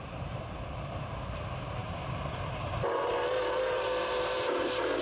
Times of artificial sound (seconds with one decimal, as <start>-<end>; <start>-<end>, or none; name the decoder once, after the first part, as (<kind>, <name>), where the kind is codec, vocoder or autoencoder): 1.8-5.0 (vocoder, BigVGAN v2)